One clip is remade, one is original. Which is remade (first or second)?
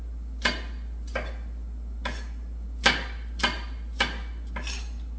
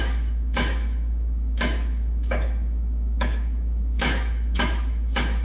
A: second